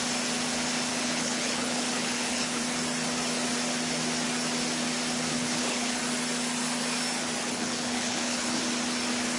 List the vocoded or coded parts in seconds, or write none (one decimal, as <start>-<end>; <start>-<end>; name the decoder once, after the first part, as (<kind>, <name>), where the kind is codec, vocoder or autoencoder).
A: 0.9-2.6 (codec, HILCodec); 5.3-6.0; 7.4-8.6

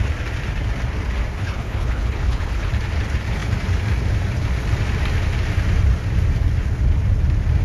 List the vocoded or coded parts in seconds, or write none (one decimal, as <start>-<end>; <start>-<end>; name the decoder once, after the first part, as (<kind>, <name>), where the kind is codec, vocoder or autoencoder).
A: 1.4-2.7 (codec, HILCodec)

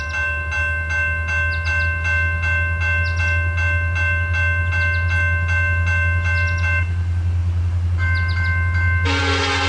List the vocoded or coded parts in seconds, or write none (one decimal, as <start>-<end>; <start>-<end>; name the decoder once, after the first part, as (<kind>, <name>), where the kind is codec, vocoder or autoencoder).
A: none

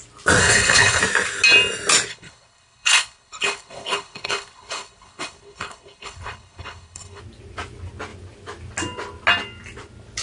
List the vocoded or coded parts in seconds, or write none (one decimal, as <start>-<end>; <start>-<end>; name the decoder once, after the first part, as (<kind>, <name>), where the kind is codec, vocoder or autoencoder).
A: 0.4-1.0 (codec, HILCodec); 2.1-7.2

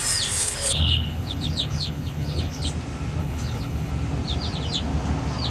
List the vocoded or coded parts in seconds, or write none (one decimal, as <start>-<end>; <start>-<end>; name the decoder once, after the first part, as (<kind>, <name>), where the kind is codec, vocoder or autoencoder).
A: 0.4-2.7 (codec, HILCodec); 3.2-3.9

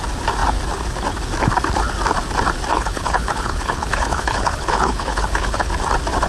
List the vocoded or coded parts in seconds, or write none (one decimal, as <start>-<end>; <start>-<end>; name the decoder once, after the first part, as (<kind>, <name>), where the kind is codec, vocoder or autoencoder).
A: 2.7-5.7 (codec, HILCodec)